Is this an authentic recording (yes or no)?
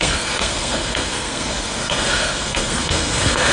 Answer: no